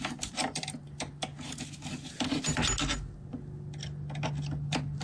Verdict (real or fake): real